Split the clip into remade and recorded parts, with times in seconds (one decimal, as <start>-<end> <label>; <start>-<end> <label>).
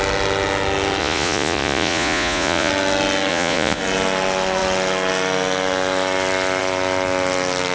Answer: 0.0-1.0 recorded; 1.0-2.7 remade; 2.7-3.3 recorded; 3.3-3.8 remade; 3.8-7.7 recorded